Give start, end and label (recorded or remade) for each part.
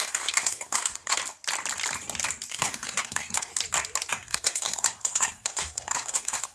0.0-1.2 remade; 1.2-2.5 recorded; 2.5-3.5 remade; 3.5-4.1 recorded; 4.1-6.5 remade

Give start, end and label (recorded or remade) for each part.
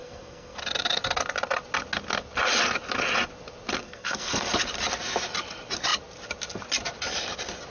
0.0-0.6 remade; 0.6-3.8 recorded; 3.8-4.5 remade; 4.5-7.7 recorded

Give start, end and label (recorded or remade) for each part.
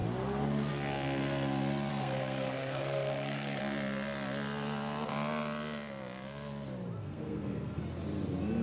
0.0-1.9 recorded; 1.9-3.6 remade; 3.6-7.0 recorded; 7.0-7.8 remade; 7.8-8.6 recorded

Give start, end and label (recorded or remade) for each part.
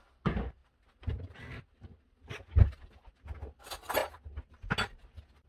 0.0-5.5 recorded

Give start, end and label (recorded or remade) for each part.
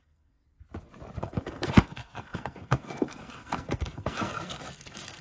0.0-0.4 remade; 0.4-1.2 recorded; 1.2-5.2 remade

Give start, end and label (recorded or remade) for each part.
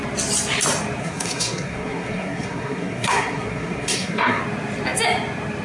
0.0-1.0 recorded; 1.0-4.4 remade; 4.4-5.6 recorded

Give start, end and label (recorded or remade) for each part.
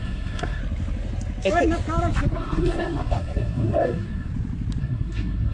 0.0-0.6 remade; 0.6-2.3 recorded; 2.3-4.3 remade; 4.3-4.8 recorded; 4.8-5.5 remade